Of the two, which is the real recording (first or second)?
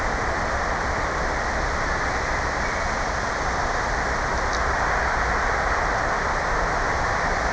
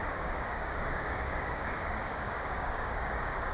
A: first